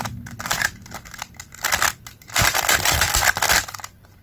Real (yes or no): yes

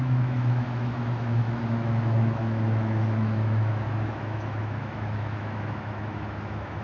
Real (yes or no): no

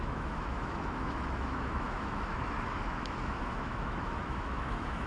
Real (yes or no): no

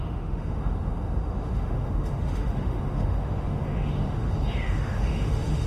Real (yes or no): no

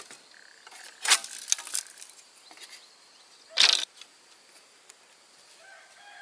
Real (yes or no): yes